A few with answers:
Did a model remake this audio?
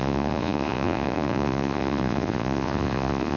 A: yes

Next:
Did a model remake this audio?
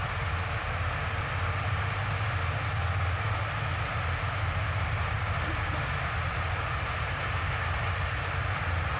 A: no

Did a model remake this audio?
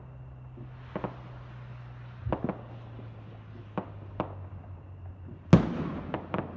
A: no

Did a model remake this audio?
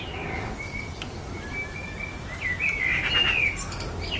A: no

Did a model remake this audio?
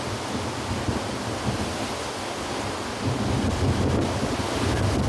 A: no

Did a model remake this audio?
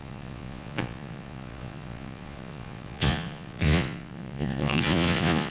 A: yes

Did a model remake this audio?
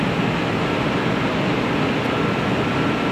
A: no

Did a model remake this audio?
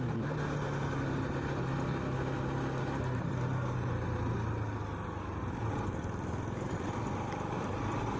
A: no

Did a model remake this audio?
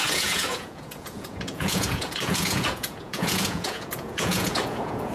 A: yes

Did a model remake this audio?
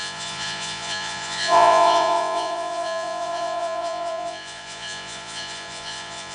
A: yes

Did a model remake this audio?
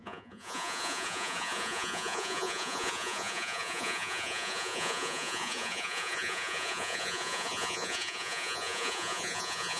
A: yes